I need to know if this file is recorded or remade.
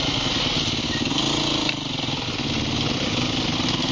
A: recorded